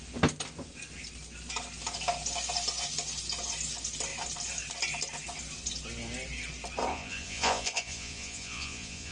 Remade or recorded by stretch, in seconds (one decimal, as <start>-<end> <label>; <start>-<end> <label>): 0.0-6.9 recorded; 6.9-9.1 remade